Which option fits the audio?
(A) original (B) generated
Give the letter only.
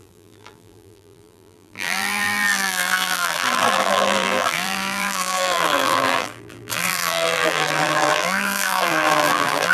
B